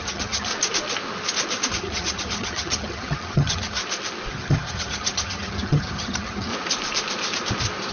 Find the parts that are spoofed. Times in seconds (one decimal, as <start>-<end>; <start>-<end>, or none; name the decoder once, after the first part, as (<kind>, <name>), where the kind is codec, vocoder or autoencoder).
0.0-0.5 (vocoder, HiFi-GAN); 1.7-3.8; 4.3-6.5

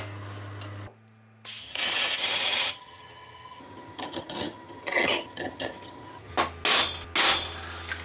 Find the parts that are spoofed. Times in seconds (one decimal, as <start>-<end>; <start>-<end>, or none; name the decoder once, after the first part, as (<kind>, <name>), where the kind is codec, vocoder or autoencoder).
1.6-6.3 (vocoder, HiFi-GAN)

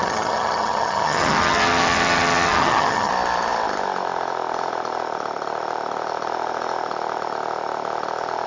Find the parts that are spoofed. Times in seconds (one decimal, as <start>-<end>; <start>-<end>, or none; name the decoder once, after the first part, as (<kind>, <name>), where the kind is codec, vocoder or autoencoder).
0.0-3.1 (vocoder, HiFi-GAN)

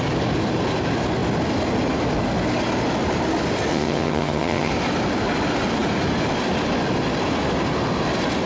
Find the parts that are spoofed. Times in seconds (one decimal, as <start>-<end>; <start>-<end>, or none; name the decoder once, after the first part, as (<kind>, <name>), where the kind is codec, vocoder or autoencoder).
3.7-4.7 (vocoder, HiFi-GAN)

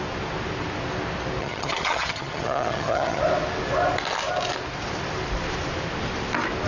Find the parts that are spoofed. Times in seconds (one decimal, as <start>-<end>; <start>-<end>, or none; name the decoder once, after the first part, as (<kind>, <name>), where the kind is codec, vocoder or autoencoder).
1.4-3.2 (vocoder, HiFi-GAN)